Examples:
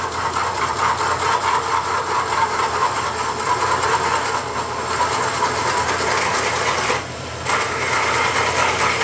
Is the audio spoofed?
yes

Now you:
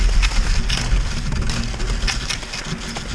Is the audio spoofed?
no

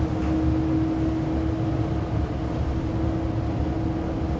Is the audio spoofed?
no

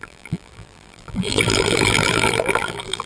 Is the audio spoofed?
yes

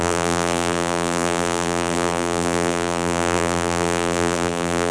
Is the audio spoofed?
yes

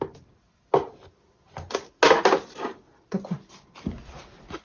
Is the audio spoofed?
no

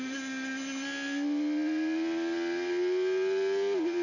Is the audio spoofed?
no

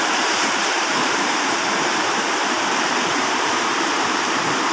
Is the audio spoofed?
yes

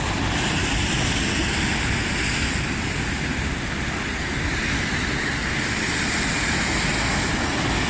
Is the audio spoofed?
no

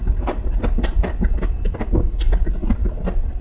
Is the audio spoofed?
no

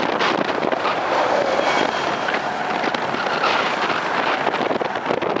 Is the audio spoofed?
no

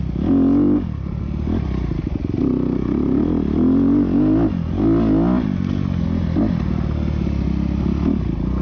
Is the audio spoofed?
no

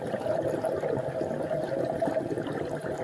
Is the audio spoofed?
no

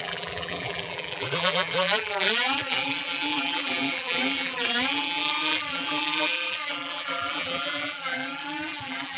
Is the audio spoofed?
yes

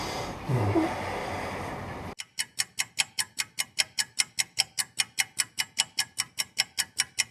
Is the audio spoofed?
no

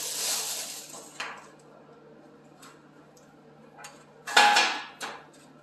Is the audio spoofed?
no